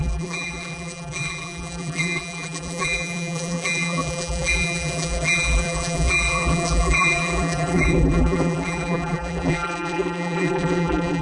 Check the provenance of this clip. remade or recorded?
remade